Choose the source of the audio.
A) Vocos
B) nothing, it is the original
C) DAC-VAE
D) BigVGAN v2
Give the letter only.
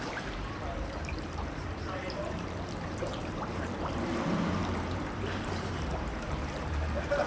D